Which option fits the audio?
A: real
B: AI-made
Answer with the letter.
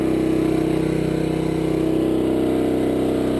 A